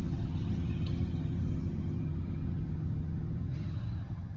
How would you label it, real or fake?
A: fake